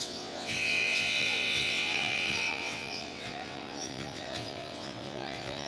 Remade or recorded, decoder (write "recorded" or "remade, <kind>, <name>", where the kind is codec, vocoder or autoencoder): remade, vocoder, WaveNeXt